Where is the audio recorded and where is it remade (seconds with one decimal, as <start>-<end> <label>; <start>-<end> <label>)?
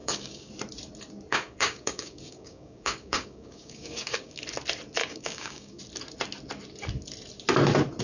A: 0.0-0.5 remade; 0.5-1.3 recorded; 1.3-4.4 remade; 4.4-5.0 recorded; 5.0-5.8 remade; 5.8-8.0 recorded